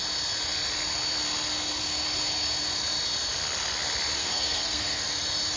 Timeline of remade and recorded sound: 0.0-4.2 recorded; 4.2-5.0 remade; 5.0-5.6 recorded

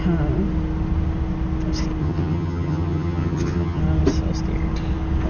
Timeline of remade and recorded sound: 0.0-2.0 recorded; 2.0-3.8 remade; 3.8-5.3 recorded

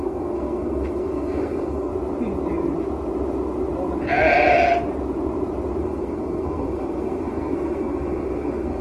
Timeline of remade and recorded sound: 0.0-1.9 remade; 1.9-5.8 recorded; 5.8-8.8 remade

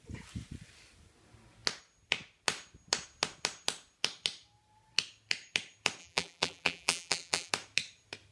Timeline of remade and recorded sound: 0.0-6.0 recorded; 6.0-7.5 remade; 7.5-8.3 recorded

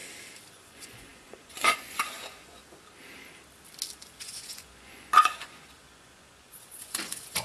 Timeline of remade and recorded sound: 0.0-0.5 recorded; 0.5-2.6 remade; 2.6-4.2 recorded; 4.2-7.4 remade

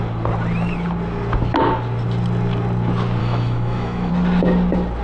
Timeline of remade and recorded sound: 0.0-3.2 recorded; 3.2-4.1 remade; 4.1-5.0 recorded

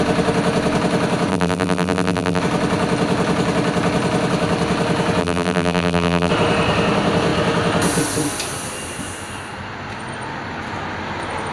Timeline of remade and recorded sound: 0.0-1.3 recorded; 1.3-2.4 remade; 2.4-5.2 recorded; 5.2-6.3 remade; 6.3-11.5 recorded

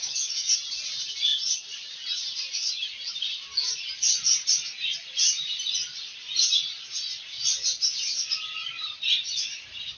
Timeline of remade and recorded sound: 0.0-0.5 remade; 0.5-10.0 recorded